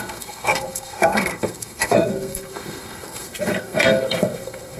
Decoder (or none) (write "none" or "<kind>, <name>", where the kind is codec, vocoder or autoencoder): codec, SNAC